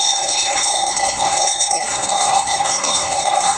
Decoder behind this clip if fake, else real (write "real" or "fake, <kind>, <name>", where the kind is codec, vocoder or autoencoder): fake, codec, SNAC